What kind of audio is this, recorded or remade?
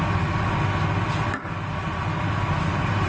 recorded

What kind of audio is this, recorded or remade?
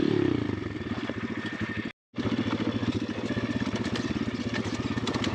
recorded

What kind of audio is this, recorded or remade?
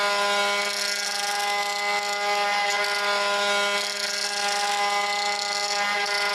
recorded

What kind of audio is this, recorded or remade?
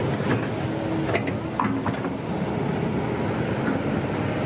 recorded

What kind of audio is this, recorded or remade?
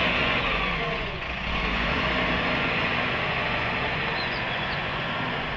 remade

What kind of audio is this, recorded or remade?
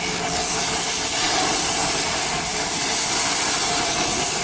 recorded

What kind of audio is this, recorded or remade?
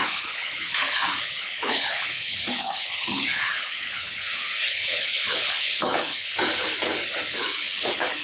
remade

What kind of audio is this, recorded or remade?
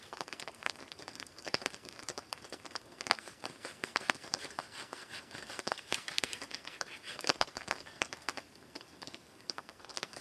remade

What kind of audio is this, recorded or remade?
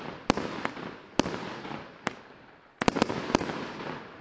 recorded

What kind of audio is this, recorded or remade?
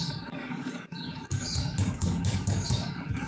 remade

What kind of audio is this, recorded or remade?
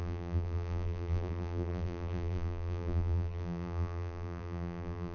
remade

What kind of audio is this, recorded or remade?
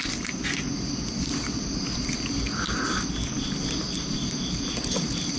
recorded